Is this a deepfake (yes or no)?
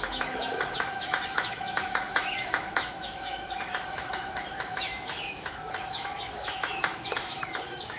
yes